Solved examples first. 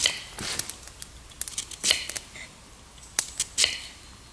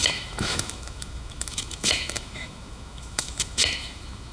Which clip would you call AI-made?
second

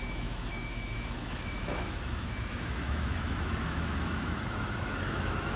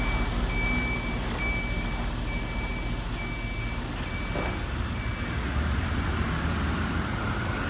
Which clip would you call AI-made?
first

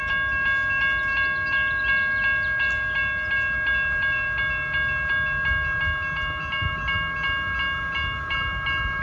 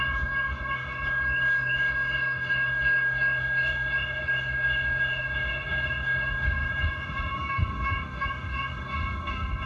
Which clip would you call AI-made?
second